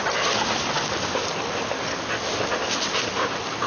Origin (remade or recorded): recorded